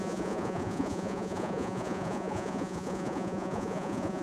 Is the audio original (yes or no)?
no